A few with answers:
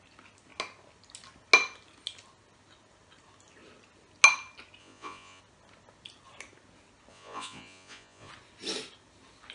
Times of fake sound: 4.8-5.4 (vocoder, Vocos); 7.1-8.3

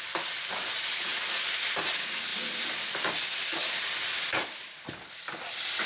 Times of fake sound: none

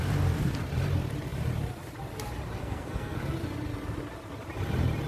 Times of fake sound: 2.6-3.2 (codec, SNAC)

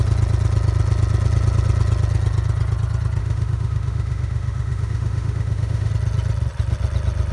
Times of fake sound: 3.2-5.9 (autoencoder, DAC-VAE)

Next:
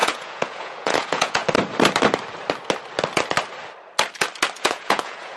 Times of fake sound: 0.0-1.4 (vocoder, Vocos); 4.6-5.4

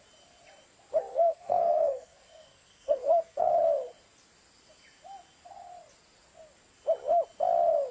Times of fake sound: 1.1-3.5 (codec, SNAC)